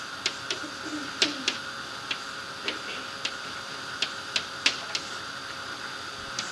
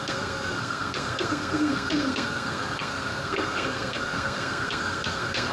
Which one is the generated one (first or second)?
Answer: second